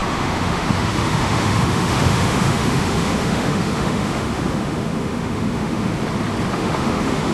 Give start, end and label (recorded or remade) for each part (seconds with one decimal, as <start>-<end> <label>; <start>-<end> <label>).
0.0-5.9 remade; 5.9-6.5 recorded; 6.5-7.3 remade